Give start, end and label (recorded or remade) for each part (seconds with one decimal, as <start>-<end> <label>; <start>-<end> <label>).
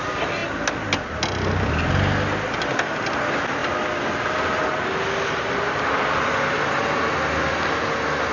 0.0-8.3 recorded